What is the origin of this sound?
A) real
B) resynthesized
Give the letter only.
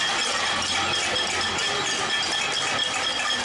A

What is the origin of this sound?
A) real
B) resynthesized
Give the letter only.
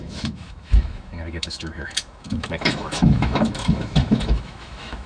B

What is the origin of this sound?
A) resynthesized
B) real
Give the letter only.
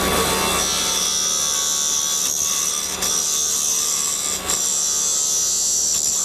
B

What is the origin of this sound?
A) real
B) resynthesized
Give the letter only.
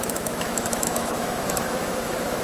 B